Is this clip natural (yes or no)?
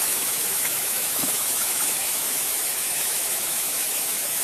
no